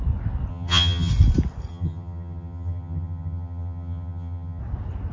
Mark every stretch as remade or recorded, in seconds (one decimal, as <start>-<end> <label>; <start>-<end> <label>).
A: 0.0-0.5 recorded; 0.5-1.1 remade; 1.1-1.7 recorded; 1.7-4.6 remade; 4.6-5.1 recorded